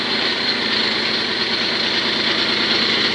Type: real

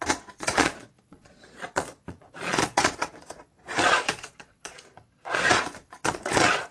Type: fake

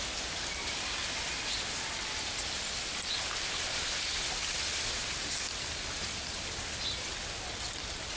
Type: real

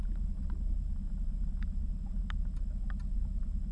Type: real